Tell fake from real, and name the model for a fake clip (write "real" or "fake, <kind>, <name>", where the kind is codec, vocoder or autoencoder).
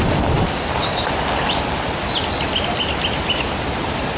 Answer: real